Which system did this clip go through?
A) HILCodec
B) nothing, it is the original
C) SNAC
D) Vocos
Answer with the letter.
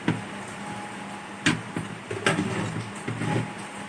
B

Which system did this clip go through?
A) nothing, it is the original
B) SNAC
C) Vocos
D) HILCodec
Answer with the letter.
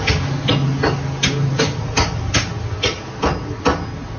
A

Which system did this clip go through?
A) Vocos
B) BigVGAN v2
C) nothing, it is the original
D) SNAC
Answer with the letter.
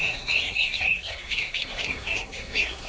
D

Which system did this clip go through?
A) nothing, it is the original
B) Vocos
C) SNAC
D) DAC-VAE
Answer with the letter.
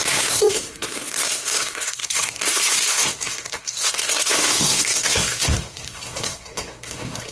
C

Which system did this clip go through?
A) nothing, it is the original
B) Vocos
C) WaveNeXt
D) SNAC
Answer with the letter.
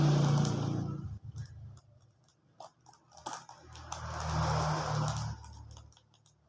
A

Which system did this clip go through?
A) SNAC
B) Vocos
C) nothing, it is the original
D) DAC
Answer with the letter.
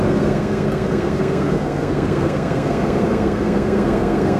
A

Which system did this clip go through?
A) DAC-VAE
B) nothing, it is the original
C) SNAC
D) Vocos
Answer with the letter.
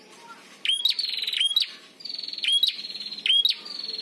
B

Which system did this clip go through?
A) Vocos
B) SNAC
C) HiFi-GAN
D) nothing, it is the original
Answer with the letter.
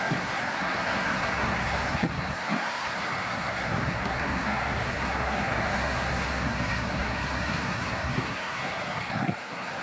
B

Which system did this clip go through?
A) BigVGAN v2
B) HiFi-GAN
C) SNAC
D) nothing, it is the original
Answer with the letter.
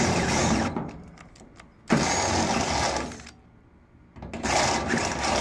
D